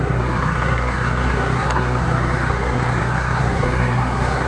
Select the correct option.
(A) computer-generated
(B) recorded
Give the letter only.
A